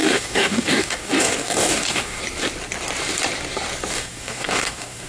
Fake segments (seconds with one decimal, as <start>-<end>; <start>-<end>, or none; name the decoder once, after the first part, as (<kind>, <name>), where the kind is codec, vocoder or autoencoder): 0.0-2.2 (codec, DAC); 3.9-5.1

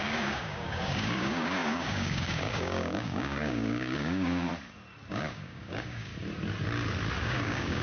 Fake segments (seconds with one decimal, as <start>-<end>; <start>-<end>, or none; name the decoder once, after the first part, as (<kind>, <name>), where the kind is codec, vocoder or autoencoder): 0.0-4.5 (codec, DAC); 5.1-6.1; 7.2-7.8